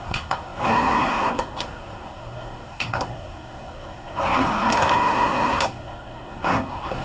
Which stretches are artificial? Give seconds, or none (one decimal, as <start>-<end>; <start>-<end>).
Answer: 0.0-7.0